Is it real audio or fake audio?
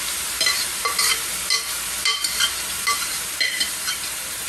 fake